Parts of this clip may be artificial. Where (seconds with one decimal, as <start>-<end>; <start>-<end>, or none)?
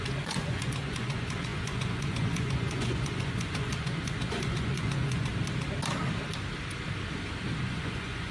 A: 0.0-5.3; 7.6-8.3